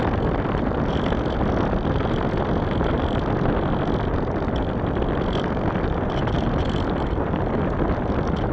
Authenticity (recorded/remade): remade